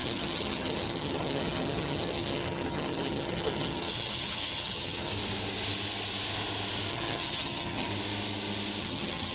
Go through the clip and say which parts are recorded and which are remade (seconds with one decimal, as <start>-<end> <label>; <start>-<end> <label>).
0.0-5.1 remade; 5.1-6.9 recorded; 6.9-7.9 remade; 7.9-8.8 recorded; 8.8-9.3 remade